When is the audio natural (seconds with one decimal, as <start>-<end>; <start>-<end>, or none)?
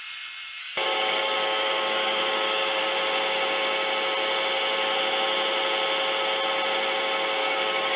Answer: 0.0-0.6; 2.8-7.4